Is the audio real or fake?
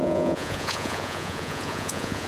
fake